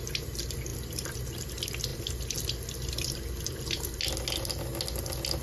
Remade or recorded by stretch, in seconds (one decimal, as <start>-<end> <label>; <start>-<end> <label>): 0.0-5.4 recorded